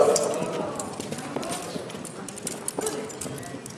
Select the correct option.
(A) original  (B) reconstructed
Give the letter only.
A